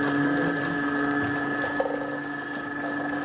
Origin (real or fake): real